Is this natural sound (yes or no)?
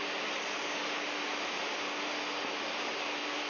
yes